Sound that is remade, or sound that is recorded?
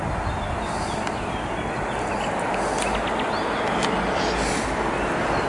recorded